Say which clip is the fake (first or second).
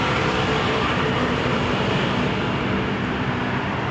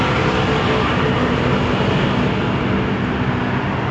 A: first